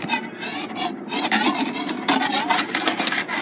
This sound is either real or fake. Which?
fake